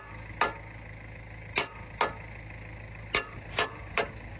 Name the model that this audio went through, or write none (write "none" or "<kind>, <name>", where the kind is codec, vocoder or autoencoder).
none